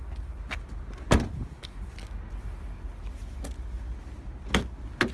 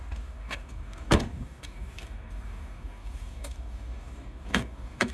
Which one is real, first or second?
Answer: first